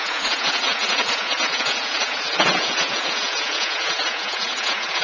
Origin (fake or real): fake